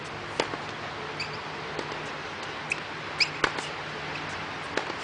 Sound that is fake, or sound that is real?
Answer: real